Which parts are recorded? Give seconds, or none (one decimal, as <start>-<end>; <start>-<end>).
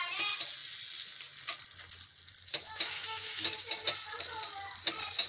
0.0-2.5; 3.7-5.3